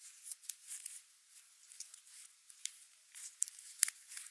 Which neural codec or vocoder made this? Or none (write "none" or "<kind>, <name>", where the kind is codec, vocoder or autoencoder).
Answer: vocoder, BigVGAN v2